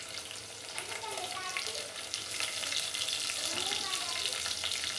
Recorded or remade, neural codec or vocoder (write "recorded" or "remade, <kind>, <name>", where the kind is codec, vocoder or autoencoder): recorded